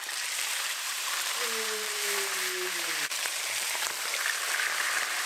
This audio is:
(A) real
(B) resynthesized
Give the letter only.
B